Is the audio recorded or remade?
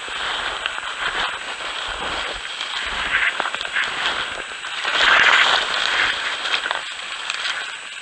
recorded